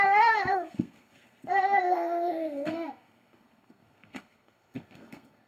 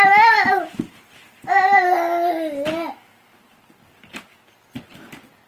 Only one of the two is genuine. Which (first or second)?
second